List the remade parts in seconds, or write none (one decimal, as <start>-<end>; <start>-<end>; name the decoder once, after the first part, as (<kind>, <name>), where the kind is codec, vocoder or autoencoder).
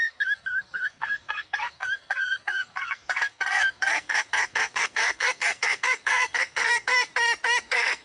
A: 0.0-7.1 (codec, SNAC); 7.6-8.0